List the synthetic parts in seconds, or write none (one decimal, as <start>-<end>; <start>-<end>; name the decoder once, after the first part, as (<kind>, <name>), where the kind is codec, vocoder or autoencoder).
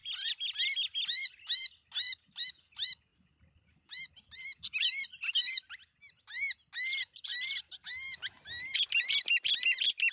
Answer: none